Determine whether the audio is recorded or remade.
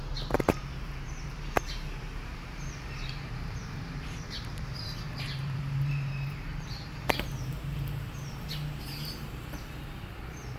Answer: remade